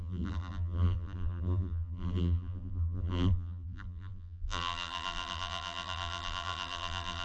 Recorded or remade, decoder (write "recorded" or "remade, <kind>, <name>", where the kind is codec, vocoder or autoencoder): remade, vocoder, BigVGAN v2